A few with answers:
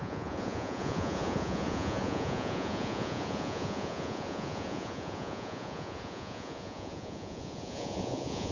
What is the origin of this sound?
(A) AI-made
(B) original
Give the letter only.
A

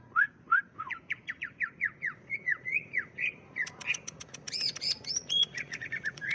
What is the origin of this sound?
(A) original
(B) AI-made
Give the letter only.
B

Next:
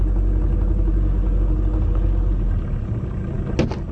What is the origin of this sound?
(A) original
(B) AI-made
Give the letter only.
A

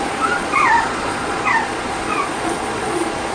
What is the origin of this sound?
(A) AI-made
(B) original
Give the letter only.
A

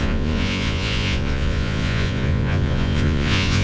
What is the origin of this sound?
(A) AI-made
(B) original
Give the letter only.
A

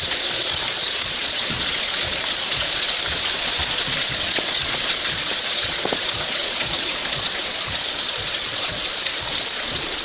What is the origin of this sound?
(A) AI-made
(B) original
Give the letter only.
A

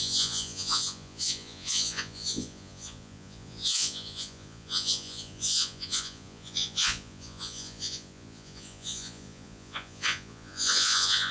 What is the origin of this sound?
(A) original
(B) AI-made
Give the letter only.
B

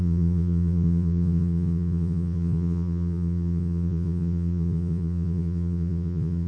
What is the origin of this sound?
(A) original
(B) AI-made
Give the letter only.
B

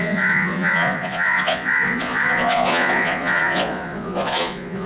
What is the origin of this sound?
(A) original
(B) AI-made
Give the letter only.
B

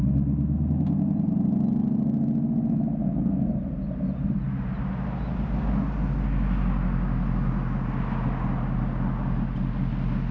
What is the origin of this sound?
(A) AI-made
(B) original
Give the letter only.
B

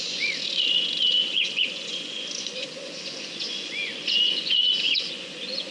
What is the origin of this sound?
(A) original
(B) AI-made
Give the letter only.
B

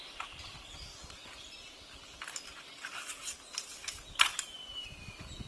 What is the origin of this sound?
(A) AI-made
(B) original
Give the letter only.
B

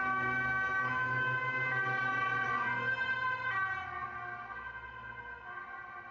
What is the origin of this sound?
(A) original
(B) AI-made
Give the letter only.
A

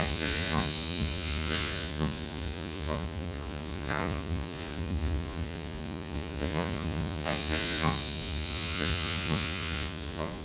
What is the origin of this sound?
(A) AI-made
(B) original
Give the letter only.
A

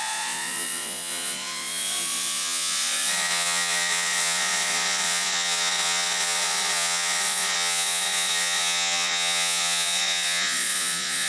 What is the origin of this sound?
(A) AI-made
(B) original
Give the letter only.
A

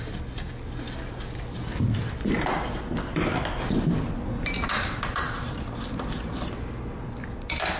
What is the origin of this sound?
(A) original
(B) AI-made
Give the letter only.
A